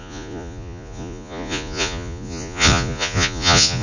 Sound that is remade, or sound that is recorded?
remade